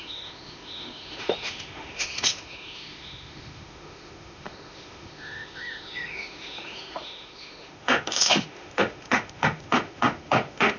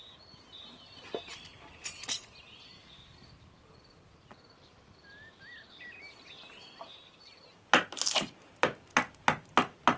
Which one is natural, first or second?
second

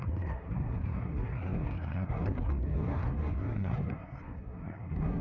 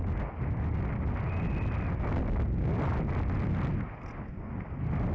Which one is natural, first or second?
second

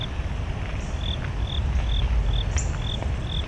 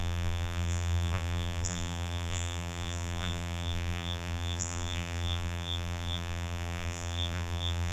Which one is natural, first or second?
first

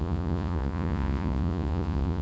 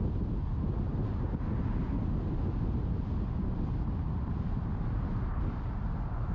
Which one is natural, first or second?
second